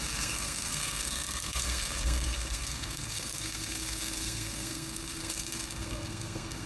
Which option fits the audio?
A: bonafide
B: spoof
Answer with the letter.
B